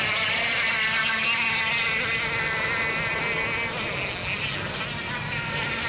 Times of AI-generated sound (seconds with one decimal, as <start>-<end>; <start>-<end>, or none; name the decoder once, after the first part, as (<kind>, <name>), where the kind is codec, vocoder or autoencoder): none